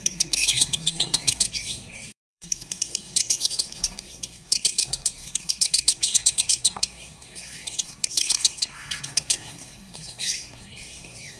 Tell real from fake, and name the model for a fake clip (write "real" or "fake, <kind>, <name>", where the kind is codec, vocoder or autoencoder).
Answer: fake, codec, SNAC